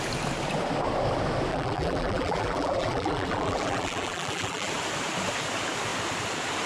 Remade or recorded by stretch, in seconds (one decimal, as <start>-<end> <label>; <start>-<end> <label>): 0.0-1.5 recorded; 1.5-4.7 remade; 4.7-6.7 recorded